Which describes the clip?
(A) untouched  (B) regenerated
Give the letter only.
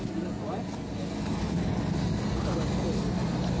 A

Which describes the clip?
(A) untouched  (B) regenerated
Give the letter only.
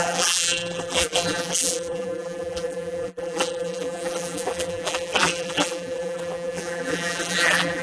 B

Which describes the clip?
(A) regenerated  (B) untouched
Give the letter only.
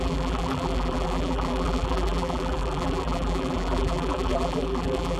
A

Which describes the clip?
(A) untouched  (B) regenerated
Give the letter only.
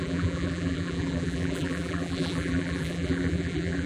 B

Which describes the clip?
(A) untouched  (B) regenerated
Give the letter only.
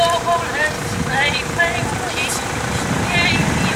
B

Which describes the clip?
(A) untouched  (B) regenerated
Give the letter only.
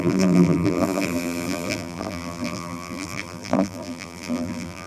B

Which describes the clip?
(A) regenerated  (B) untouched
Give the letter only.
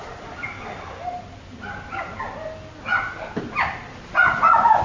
B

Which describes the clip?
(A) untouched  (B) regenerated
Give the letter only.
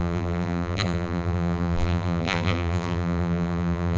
B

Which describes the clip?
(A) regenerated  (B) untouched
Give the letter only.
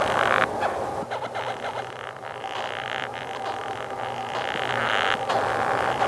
B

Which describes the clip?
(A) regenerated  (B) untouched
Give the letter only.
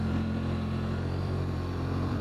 A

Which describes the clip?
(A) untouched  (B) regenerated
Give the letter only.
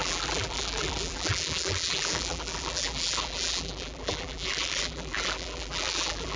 B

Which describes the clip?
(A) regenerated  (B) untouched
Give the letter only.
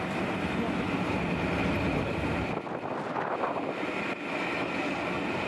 B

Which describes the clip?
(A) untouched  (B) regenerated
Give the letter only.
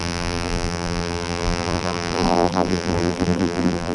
B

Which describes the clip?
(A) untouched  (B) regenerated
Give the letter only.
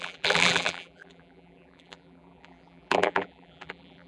B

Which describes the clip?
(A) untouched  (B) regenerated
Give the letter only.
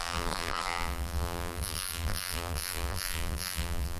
B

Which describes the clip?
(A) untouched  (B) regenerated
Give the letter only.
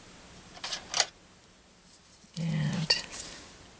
A